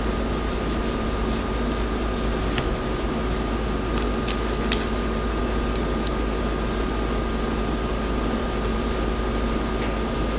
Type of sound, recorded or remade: recorded